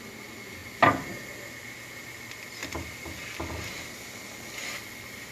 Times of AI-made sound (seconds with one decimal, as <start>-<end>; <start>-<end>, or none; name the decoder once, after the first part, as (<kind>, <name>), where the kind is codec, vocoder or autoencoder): none